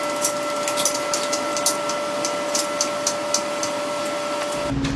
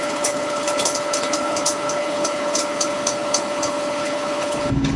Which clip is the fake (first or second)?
second